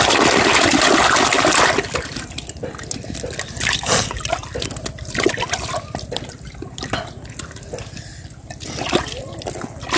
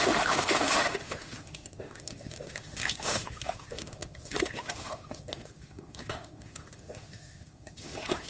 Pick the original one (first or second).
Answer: first